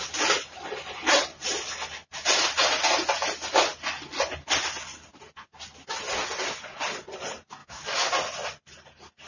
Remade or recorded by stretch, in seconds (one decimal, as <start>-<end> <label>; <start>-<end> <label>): 0.0-7.6 recorded; 7.6-8.1 remade; 8.1-9.3 recorded